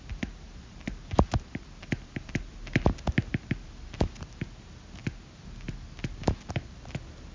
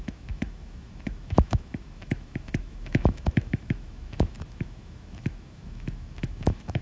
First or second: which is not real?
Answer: second